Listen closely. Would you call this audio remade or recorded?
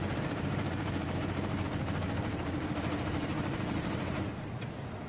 remade